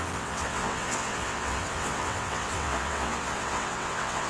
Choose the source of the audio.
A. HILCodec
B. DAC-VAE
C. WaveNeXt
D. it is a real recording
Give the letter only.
C